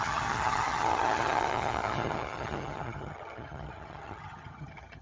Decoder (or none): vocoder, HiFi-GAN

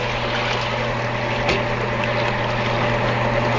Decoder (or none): none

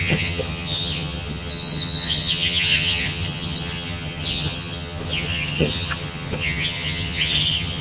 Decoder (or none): vocoder, HiFi-GAN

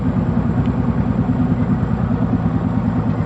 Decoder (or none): none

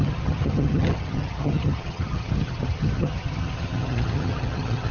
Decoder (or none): vocoder, HiFi-GAN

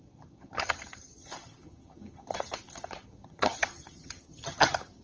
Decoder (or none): vocoder, HiFi-GAN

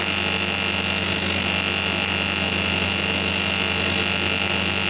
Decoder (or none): none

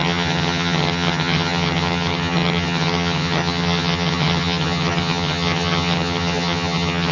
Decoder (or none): vocoder, HiFi-GAN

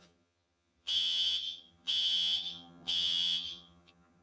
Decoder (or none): vocoder, HiFi-GAN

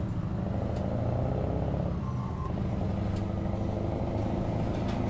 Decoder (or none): none